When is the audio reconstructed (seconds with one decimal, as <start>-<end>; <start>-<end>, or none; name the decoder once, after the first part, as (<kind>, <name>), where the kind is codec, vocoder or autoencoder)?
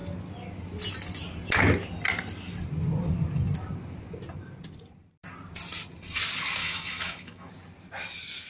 6.6-7.5 (autoencoder, DAC-VAE)